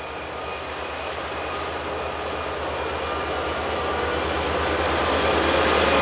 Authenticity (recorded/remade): recorded